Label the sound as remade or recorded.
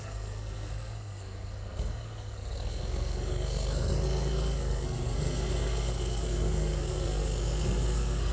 remade